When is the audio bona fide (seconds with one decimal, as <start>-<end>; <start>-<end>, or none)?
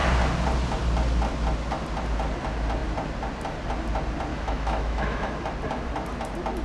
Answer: 0.0-4.3; 5.3-6.6